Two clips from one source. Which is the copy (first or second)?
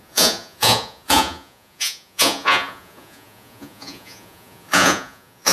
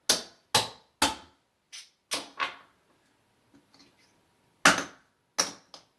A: first